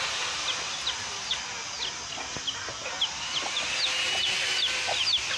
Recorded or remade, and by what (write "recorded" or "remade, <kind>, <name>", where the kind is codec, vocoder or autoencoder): recorded